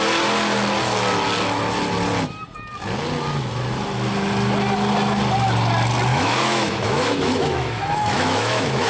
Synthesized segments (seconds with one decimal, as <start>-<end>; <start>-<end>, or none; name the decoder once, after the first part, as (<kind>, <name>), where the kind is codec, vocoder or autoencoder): 6.1-8.9 (autoencoder, DAC-VAE)